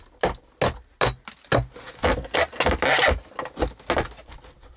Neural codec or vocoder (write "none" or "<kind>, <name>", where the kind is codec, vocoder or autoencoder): none